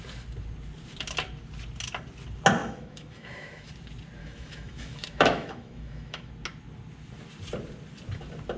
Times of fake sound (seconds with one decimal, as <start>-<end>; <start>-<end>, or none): 2.6-3.7; 4.2-6.3